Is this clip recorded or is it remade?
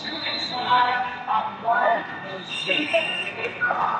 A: remade